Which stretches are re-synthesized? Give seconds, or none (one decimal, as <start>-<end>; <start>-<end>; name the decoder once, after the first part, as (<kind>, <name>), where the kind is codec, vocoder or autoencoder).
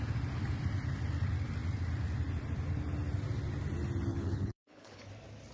4.1-5.1 (codec, HILCodec)